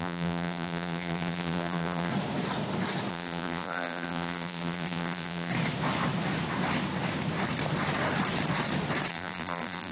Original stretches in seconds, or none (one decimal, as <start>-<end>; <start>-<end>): 2.1-3.1; 5.5-9.1